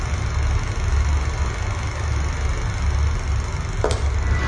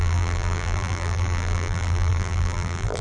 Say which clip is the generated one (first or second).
second